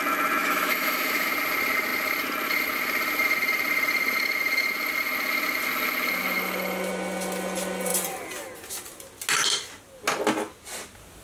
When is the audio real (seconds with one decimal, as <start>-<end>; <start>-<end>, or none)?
0.0-0.4; 1.3-11.2